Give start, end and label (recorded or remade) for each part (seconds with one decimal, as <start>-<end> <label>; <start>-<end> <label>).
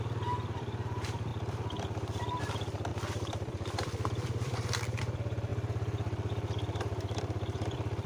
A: 0.0-5.5 remade; 5.5-6.8 recorded; 6.8-8.1 remade